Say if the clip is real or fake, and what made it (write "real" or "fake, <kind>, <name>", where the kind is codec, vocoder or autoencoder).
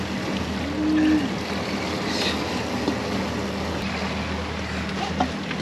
real